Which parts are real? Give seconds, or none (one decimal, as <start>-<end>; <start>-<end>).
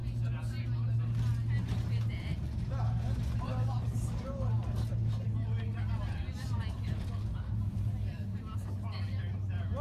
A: 0.0-9.8